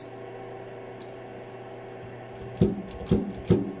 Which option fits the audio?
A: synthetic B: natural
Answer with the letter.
B